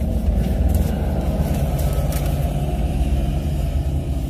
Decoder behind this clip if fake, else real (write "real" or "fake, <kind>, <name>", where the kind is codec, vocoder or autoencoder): fake, vocoder, BigVGAN v2